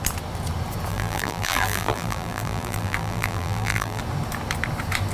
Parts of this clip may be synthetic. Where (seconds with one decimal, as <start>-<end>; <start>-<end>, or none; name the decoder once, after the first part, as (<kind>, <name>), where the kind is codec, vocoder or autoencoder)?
0.9-4.0 (vocoder, BigVGAN v2)